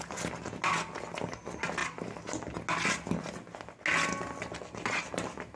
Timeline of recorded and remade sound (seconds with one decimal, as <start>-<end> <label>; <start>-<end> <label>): 0.0-5.6 recorded

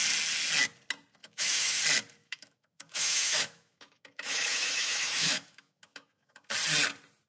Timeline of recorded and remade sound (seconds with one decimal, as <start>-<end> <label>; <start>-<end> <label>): 0.0-1.2 recorded; 1.2-1.8 remade; 1.8-2.2 recorded; 2.2-6.5 remade; 6.5-7.3 recorded

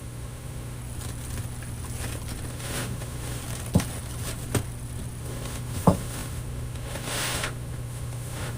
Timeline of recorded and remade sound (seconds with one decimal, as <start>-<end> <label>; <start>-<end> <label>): 0.0-0.8 remade; 0.8-2.5 recorded; 2.5-3.4 remade; 3.4-5.2 recorded; 5.2-8.6 remade